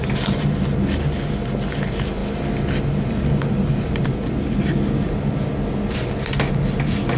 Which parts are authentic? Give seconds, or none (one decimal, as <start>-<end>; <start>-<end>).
0.0-7.2